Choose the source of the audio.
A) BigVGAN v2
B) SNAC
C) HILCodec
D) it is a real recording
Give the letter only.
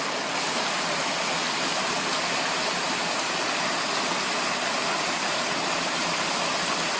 D